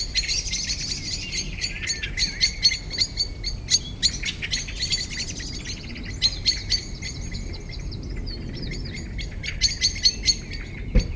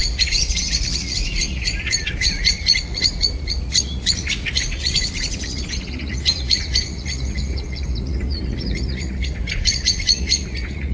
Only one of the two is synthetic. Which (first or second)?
second